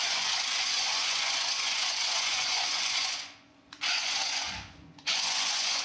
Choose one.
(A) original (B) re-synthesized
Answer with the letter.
B